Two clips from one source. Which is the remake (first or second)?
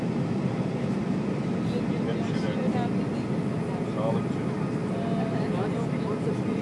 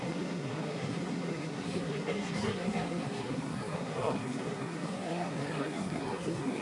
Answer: second